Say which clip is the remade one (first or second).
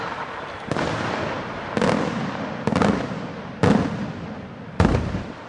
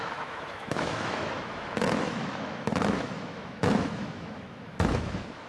second